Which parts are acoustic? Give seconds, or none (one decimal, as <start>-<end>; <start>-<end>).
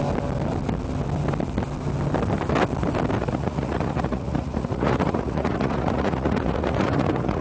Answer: 0.0-3.2